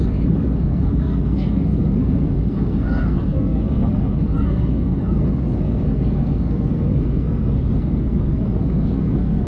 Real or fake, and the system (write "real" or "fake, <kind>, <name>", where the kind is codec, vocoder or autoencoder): fake, codec, SNAC